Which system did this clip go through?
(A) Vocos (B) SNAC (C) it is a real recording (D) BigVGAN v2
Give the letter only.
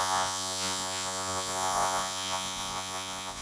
A